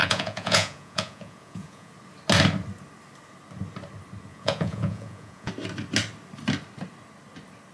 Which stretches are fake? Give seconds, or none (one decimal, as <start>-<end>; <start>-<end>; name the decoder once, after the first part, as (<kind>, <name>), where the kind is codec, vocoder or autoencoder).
0.0-1.9 (vocoder, Vocos); 4.3-5.5